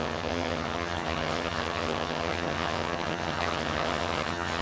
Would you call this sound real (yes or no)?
no